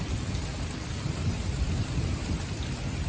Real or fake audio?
fake